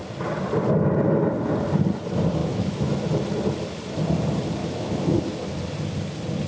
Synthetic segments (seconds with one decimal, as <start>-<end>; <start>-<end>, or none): 2.4-2.9; 4.6-5.2